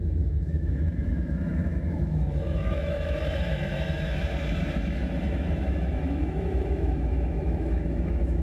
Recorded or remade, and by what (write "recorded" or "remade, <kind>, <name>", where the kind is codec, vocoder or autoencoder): remade, autoencoder, DAC-VAE